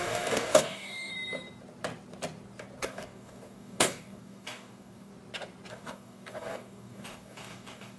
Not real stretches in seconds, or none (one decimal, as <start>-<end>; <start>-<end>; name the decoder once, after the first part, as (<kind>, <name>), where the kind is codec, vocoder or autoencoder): 0.0-1.1 (codec, DAC); 2.8-5.1; 5.7-8.0